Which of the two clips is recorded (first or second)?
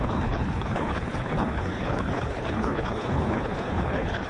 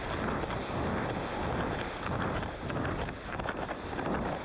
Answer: second